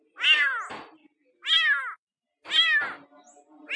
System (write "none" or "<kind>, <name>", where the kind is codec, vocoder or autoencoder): none